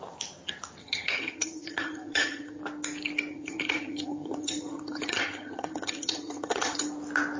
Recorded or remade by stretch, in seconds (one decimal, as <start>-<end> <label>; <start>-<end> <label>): 0.0-0.8 recorded; 0.8-2.6 remade; 2.6-3.3 recorded; 3.3-6.9 remade; 6.9-7.4 recorded